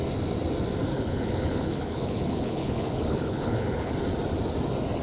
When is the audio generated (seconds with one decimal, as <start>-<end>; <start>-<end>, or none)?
0.9-3.9